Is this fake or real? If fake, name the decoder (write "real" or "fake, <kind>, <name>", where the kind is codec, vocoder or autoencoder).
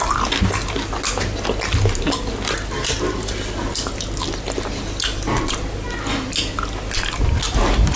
real